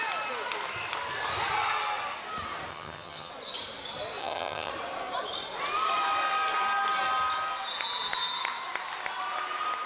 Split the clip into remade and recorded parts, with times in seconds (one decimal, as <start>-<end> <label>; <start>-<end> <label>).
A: 0.0-2.7 recorded; 2.7-3.3 remade; 3.3-4.2 recorded; 4.2-4.7 remade; 4.7-9.9 recorded